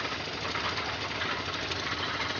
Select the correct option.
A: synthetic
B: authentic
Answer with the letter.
B